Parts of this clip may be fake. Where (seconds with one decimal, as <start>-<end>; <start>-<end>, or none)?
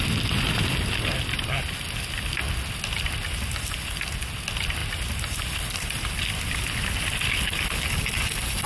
none